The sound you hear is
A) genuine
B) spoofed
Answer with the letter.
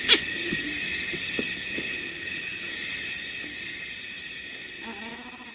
A